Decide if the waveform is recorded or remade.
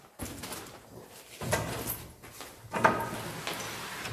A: recorded